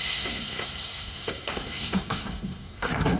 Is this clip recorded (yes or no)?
no